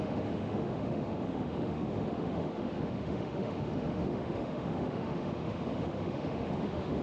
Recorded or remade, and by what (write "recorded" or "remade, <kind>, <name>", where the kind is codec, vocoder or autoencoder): remade, autoencoder, DAC-VAE